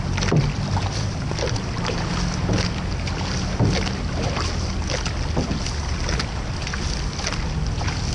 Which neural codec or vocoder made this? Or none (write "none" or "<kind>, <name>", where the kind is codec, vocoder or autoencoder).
none